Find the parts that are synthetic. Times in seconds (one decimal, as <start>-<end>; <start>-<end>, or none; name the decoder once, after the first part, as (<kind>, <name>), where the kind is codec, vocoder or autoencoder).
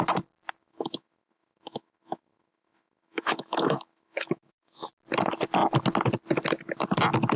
0.6-4.9 (autoencoder, DAC-VAE)